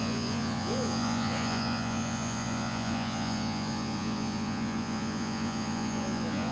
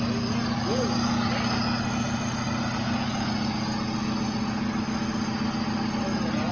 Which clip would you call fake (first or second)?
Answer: first